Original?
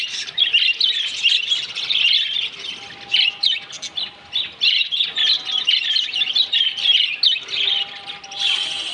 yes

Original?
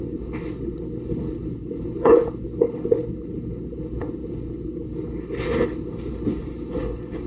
no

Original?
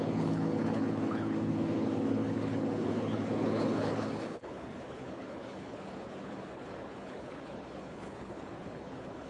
no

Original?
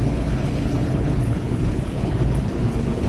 no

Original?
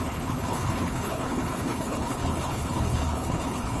no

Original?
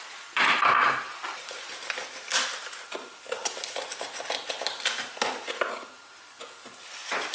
yes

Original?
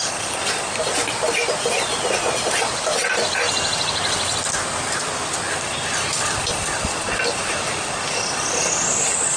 yes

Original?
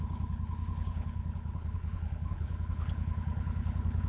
no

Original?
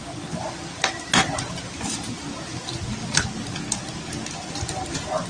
yes